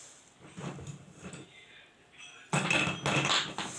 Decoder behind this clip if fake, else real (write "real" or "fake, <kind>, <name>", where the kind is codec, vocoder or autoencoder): real